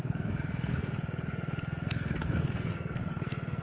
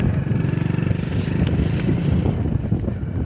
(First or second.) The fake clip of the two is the first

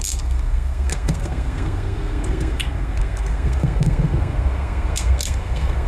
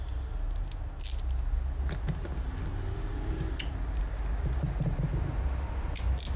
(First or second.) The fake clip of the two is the first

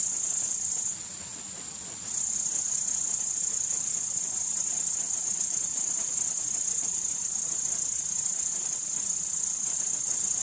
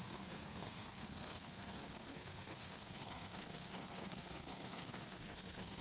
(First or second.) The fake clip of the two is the second